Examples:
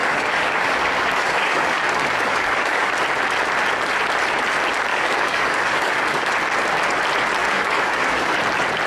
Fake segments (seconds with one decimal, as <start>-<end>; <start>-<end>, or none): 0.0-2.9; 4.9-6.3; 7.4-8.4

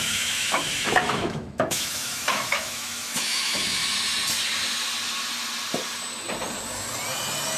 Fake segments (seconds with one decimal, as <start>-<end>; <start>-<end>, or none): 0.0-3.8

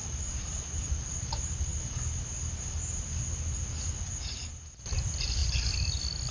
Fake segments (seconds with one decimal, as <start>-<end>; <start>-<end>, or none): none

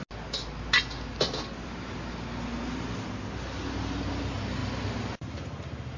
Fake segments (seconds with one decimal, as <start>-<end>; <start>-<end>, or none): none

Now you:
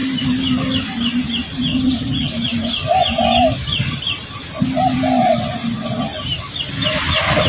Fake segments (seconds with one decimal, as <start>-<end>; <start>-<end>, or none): 1.7-2.3